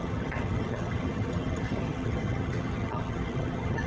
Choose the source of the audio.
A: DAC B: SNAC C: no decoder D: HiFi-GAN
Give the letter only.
D